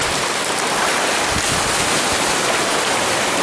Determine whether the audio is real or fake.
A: real